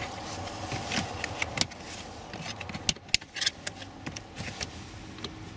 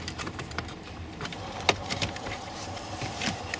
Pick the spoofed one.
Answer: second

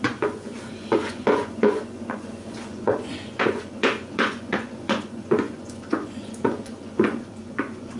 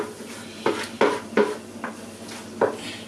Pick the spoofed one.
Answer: first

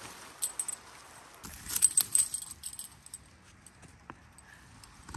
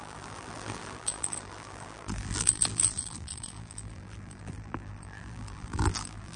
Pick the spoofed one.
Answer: second